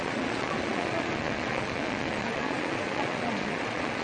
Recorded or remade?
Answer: remade